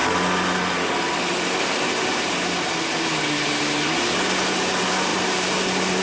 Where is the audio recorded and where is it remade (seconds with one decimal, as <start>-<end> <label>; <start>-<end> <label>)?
0.0-5.1 recorded; 5.1-6.0 remade